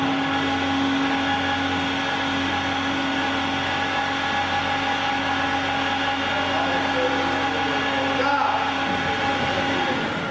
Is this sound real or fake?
real